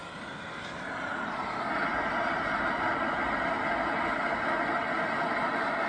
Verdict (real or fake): real